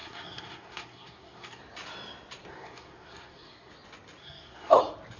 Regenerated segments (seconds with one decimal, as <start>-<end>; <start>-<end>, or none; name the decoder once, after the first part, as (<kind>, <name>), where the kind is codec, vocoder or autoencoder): 0.0-1.6 (codec, SNAC); 2.5-3.7; 4.2-4.8